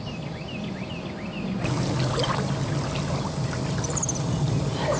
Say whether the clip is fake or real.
real